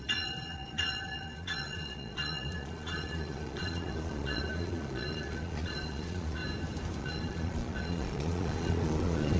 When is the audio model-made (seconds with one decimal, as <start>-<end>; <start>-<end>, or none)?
0.0-6.4; 7.0-9.4